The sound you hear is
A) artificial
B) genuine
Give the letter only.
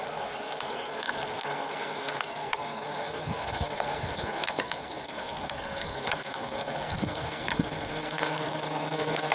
A